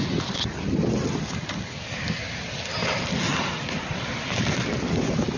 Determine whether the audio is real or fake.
real